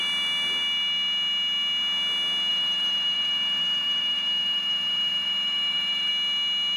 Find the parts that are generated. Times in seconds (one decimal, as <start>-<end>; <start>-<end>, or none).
2.5-6.1